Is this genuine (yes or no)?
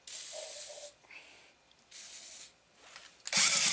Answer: yes